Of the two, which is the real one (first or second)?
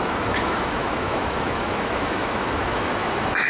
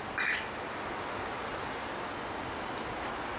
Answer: second